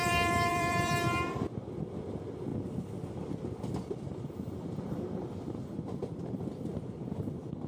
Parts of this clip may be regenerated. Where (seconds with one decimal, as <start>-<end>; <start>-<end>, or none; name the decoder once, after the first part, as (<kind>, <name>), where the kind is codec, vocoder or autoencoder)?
0.0-2.5 (vocoder, BigVGAN v2); 3.7-6.7; 7.2-7.7